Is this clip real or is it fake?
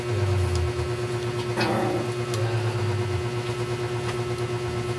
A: real